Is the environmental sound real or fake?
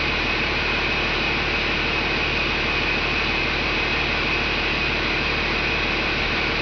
real